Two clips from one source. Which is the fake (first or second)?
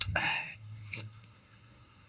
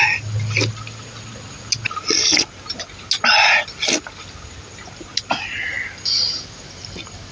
first